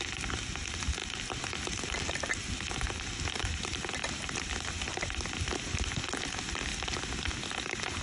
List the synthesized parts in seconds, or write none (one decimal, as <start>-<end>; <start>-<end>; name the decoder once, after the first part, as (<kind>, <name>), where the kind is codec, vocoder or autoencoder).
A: 1.0-3.2 (vocoder, BigVGAN v2); 4.0-4.7